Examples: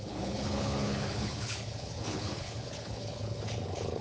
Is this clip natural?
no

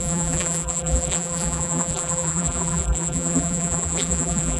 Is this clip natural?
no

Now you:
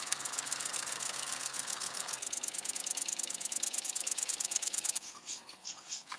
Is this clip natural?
no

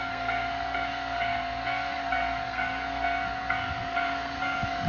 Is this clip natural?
no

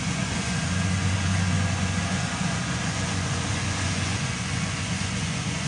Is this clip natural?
no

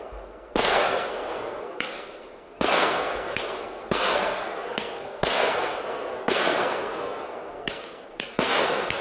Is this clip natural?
no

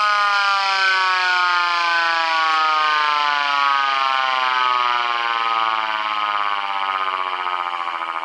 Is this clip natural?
yes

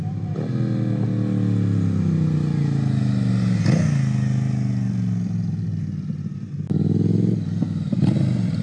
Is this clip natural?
yes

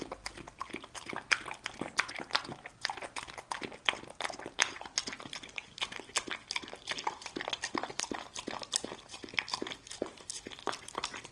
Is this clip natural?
yes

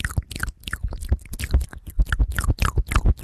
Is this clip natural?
yes